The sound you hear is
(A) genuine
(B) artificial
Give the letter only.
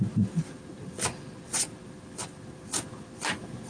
A